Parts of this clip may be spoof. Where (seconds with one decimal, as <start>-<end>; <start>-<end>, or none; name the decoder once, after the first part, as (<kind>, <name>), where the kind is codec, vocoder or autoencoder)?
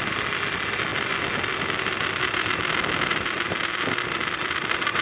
none